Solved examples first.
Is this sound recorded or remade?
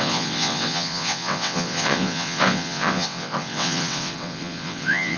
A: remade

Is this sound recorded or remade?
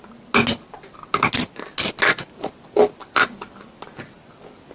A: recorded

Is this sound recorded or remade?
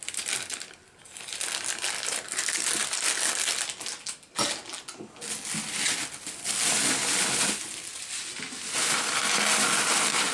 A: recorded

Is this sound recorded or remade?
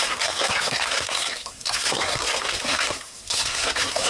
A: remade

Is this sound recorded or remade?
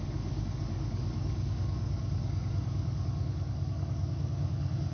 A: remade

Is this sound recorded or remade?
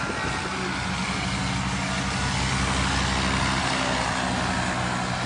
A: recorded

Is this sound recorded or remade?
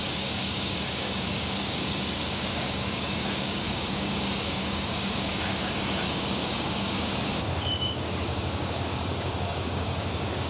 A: remade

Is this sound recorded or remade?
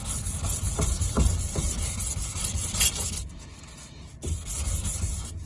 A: recorded